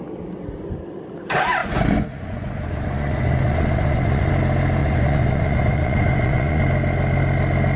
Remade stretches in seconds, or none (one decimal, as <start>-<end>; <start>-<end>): 1.6-4.3; 4.8-6.6